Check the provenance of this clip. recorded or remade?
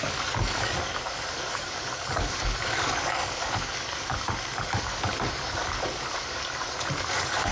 remade